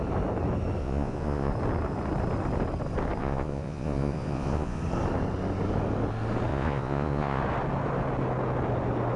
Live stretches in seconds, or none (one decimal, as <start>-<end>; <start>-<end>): 0.0-0.8; 1.5-3.2; 4.8-6.5; 7.4-9.2